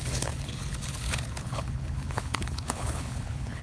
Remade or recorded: remade